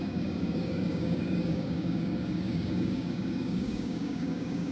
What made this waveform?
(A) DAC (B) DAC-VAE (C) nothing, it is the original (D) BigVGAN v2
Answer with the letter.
A